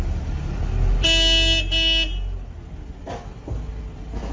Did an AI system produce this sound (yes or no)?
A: no